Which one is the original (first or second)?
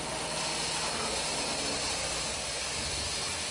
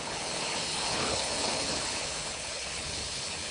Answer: first